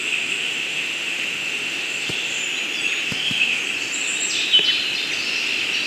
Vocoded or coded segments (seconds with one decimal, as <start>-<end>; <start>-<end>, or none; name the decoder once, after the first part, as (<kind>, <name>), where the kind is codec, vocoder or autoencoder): 0.0-2.4 (autoencoder, DAC-VAE); 3.0-3.6